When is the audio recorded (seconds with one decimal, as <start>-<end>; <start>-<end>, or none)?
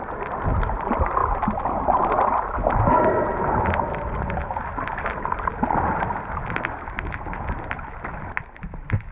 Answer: 0.0-9.1